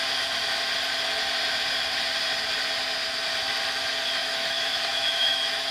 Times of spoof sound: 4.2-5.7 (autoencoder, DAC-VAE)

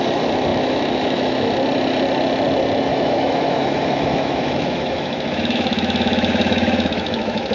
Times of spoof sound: 0.5-1.5 (autoencoder, DAC-VAE); 2.9-7.5

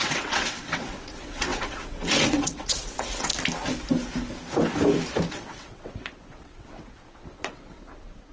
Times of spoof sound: 0.0-3.3 (vocoder, WaveNeXt); 5.3-8.3

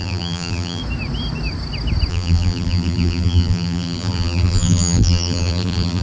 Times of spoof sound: 0.0-0.8 (vocoder, BigVGAN v2); 2.1-6.0

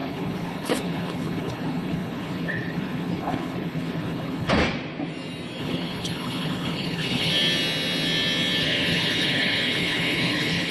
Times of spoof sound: 0.0-4.6 (codec, HILCodec); 5.6-7.3; 8.6-10.7

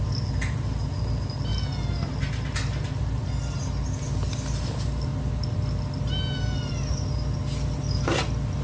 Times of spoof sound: none

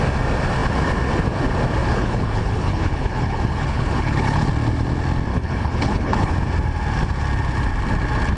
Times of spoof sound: 1.8-4.5 (codec, HILCodec); 5.3-6.3